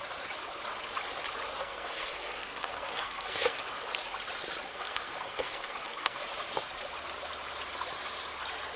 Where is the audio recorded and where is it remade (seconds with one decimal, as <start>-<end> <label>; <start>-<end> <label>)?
0.0-1.6 recorded; 1.6-3.7 remade; 3.7-4.7 recorded; 4.7-6.2 remade; 6.2-8.8 recorded